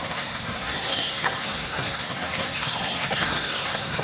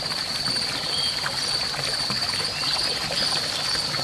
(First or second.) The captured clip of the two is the second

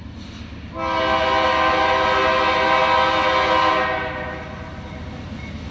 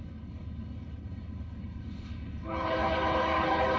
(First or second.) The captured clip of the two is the first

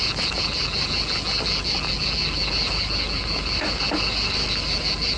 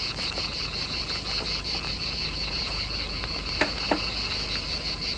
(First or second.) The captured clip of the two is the first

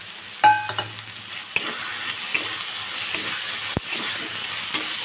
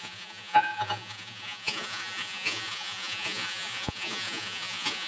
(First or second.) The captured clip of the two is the first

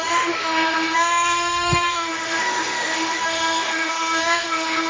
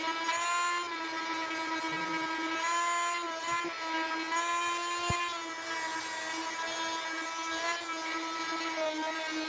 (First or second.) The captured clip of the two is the second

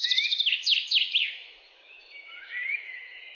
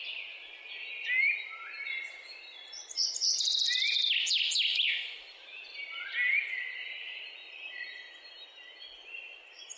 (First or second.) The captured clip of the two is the second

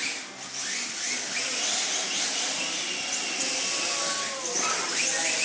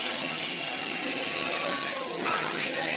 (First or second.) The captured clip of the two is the first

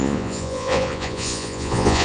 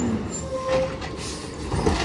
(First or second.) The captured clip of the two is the second